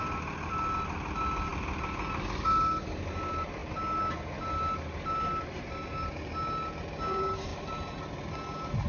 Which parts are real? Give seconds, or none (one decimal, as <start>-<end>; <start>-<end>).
0.0-8.9